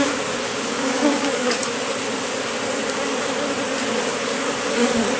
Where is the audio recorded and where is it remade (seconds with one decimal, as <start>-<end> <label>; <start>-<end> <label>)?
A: 0.0-1.6 remade; 1.6-4.2 recorded; 4.2-5.2 remade